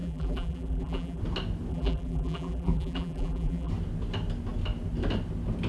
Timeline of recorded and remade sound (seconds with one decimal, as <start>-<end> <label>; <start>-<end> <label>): 0.0-1.2 remade; 1.2-1.7 recorded; 1.7-3.7 remade; 3.7-5.7 recorded